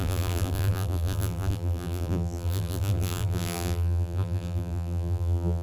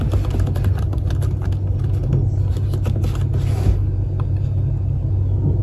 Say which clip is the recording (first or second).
second